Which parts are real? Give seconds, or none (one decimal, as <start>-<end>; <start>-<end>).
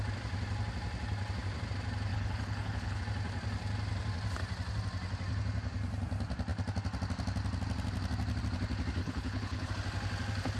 0.0-2.1; 3.0-9.0; 9.7-10.6